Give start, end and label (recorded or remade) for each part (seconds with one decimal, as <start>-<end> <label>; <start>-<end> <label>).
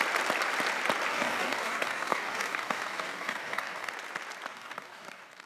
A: 0.0-1.1 recorded; 1.1-3.9 remade; 3.9-4.5 recorded; 4.5-5.5 remade